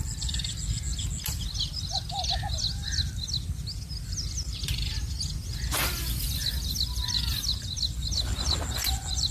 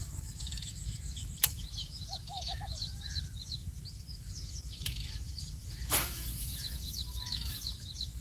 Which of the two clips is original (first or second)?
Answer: first